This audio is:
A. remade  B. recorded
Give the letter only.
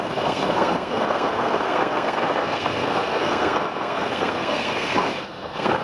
A